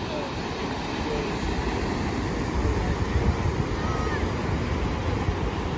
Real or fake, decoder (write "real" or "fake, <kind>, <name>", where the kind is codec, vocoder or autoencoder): real